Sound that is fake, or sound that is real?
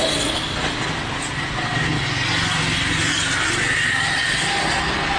real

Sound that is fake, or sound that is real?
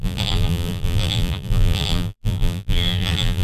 fake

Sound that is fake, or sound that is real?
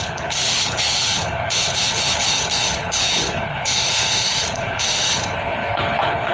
fake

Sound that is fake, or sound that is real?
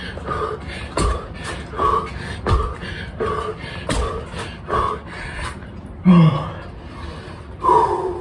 real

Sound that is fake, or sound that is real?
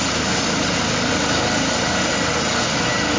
real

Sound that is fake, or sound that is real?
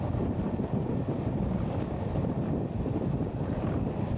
real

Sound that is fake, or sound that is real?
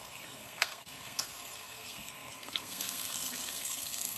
fake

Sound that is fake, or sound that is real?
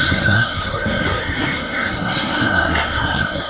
fake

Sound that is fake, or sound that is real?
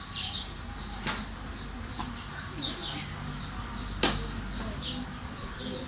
real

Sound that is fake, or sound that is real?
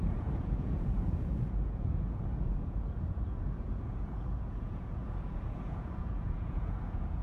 fake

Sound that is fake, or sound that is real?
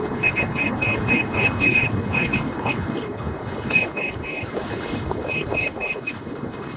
fake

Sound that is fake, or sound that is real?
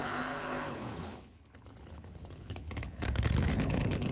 fake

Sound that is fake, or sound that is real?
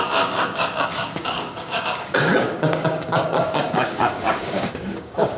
fake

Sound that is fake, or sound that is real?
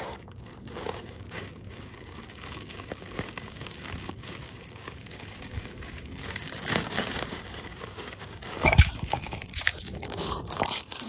fake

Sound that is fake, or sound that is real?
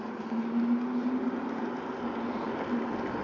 real